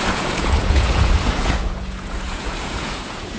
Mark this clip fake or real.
fake